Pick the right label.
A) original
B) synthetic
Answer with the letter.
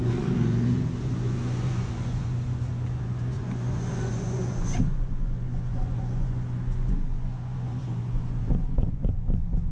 B